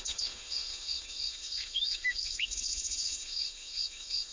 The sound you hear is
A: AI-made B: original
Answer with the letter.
A